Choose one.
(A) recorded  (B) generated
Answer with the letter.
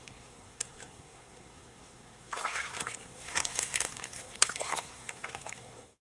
B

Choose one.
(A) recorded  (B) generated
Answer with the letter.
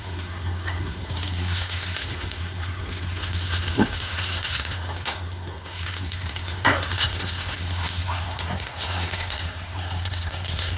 B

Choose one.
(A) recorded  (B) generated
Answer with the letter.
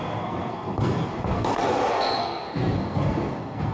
B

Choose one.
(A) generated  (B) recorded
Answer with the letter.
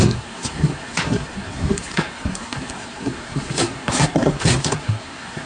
A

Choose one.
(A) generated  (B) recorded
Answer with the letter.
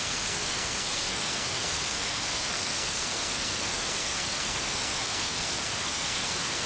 A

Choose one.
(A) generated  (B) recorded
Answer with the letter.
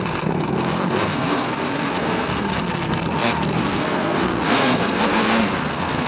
A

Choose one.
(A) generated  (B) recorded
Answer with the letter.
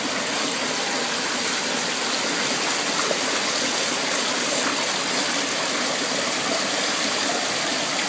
B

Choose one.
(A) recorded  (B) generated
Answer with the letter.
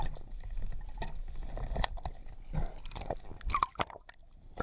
A